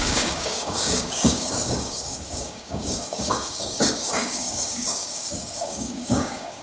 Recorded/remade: remade